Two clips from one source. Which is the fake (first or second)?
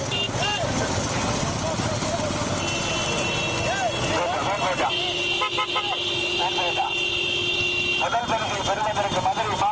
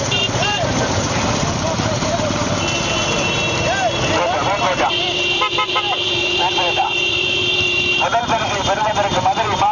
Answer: second